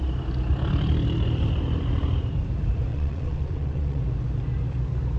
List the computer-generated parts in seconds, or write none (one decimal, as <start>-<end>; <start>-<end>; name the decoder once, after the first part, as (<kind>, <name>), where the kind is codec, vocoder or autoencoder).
2.9-4.0 (vocoder, WaveNeXt)